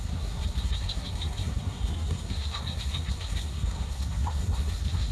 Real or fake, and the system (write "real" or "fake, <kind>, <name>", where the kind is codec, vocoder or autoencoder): fake, codec, SNAC